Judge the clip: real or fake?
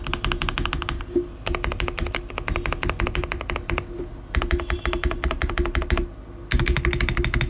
real